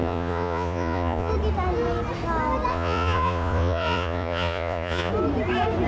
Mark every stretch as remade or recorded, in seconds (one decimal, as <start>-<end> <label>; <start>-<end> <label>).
0.0-1.3 remade; 1.3-2.7 recorded; 2.7-5.1 remade; 5.1-5.9 recorded